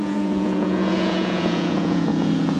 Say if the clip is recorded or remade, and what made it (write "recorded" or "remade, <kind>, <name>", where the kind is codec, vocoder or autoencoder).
remade, vocoder, Vocos